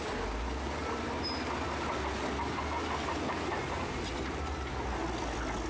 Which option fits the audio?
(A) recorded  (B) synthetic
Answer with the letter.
A